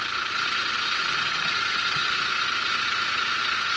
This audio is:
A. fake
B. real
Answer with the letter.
B